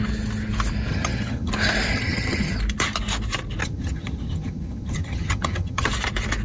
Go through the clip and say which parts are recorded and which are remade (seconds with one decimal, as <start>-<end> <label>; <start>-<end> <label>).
0.0-0.9 recorded; 0.9-1.5 remade; 1.5-1.9 recorded; 1.9-2.5 remade; 2.5-3.6 recorded; 3.6-5.9 remade; 5.9-6.4 recorded